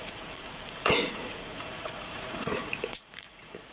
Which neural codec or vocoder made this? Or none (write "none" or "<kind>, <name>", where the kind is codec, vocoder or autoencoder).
vocoder, Vocos